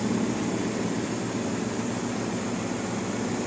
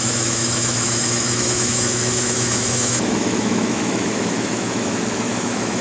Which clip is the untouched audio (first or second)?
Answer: first